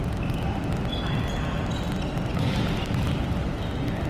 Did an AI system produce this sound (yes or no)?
no